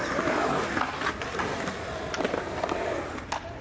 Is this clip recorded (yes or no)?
yes